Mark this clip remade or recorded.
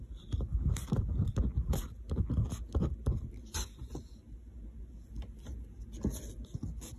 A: recorded